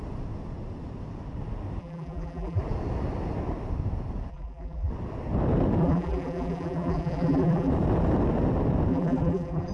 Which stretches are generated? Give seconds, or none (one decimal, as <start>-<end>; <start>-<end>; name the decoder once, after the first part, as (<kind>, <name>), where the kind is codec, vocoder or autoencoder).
1.8-2.6 (vocoder, BigVGAN v2); 4.3-4.9; 5.8-7.7; 8.9-9.7